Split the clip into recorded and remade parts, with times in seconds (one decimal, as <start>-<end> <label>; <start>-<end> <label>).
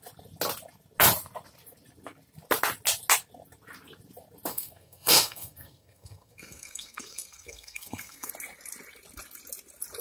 0.0-4.5 recorded; 4.5-8.3 remade; 8.3-10.0 recorded